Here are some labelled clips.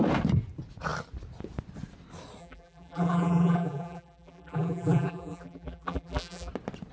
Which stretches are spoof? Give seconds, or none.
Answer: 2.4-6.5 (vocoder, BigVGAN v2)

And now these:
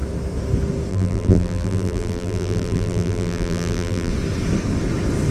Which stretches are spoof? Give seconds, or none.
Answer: 0.9-4.1 (vocoder, BigVGAN v2)

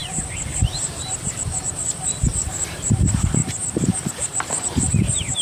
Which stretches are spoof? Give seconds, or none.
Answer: 0.0-3.4 (vocoder, BigVGAN v2); 4.1-5.4

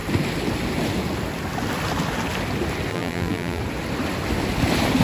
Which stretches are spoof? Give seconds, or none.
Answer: 2.9-3.6 (vocoder, BigVGAN v2)

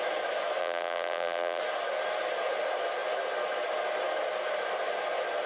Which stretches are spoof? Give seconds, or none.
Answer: 0.6-1.6 (vocoder, BigVGAN v2)

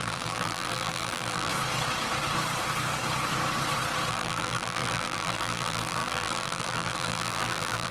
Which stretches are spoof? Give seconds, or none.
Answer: 0.0-1.5 (vocoder, BigVGAN v2); 4.1-7.9

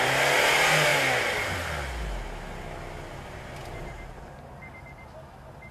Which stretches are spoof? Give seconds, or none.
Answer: none